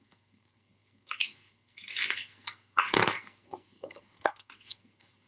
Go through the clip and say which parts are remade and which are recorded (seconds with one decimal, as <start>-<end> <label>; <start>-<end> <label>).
0.0-5.3 remade